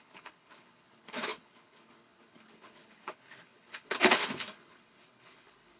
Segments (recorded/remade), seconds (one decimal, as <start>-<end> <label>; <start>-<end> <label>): 0.0-5.8 remade